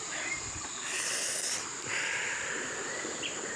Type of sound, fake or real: real